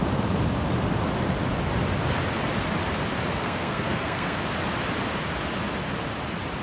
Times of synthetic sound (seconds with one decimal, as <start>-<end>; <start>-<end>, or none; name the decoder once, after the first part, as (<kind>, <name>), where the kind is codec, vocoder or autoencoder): 3.3-4.4 (codec, SNAC)